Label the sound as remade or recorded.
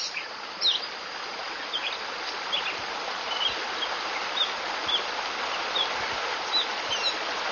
recorded